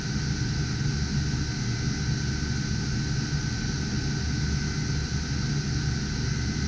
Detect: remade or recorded recorded